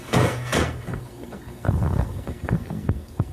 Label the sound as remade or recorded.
remade